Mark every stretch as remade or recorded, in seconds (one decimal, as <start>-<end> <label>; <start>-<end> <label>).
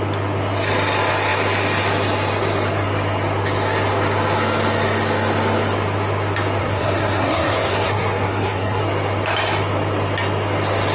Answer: 0.0-6.6 recorded; 6.6-8.8 remade; 8.8-10.9 recorded